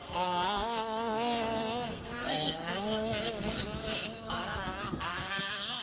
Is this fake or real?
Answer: fake